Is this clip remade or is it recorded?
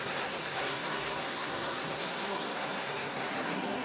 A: remade